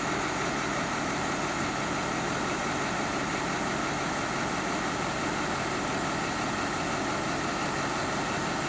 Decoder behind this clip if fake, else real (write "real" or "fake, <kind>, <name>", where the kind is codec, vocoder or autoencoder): real